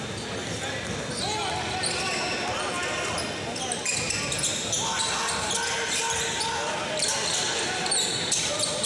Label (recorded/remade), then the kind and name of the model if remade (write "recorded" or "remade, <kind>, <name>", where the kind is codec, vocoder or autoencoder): recorded